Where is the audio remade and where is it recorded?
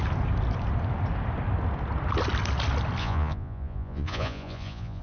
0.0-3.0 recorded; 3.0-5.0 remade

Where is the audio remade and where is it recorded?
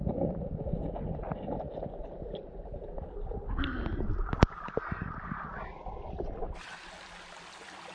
0.0-7.9 recorded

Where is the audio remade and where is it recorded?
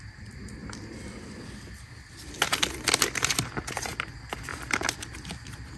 0.0-5.8 recorded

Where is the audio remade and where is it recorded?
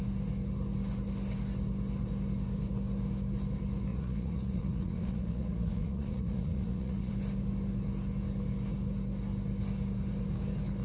0.0-3.9 recorded; 3.9-7.1 remade; 7.1-10.8 recorded